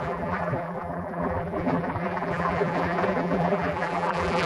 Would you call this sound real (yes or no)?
no